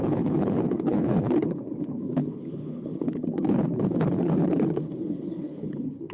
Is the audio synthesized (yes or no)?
yes